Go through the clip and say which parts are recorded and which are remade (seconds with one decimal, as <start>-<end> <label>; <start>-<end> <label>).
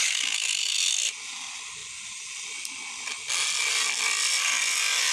0.0-5.1 recorded